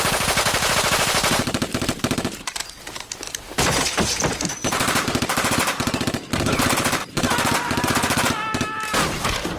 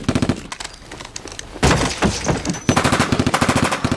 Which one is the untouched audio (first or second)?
second